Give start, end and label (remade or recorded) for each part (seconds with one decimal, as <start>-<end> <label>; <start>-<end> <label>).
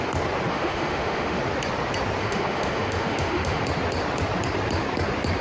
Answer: 0.0-0.5 recorded; 0.5-1.4 remade; 1.4-2.2 recorded; 2.2-3.6 remade; 3.6-5.4 recorded